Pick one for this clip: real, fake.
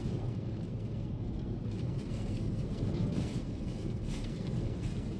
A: fake